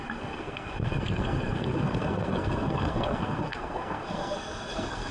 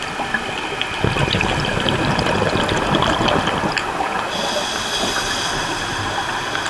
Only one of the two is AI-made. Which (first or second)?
first